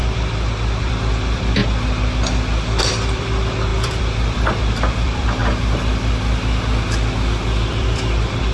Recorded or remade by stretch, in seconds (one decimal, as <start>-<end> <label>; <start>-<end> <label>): 0.0-0.8 recorded; 0.8-1.6 remade; 1.6-2.8 recorded; 2.8-5.4 remade; 5.4-7.7 recorded; 7.7-8.5 remade